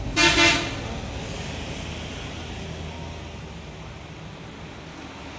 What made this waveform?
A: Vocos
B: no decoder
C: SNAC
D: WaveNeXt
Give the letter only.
B